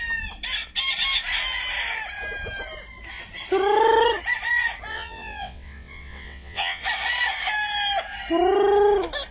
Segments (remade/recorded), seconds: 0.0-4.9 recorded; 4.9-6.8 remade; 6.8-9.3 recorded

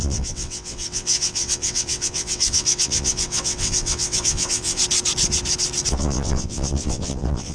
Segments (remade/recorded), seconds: 0.0-4.8 remade; 4.8-5.9 recorded; 5.9-7.5 remade

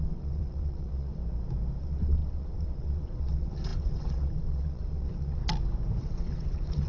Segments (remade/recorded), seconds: 0.0-1.2 remade; 1.2-1.8 recorded; 1.8-5.4 remade; 5.4-6.0 recorded; 6.0-6.9 remade

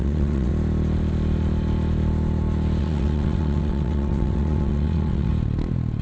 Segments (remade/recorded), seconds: 0.0-0.5 remade; 0.5-2.8 recorded; 2.8-5.3 remade; 5.3-6.0 recorded